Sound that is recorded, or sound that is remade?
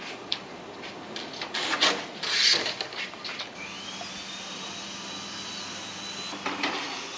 recorded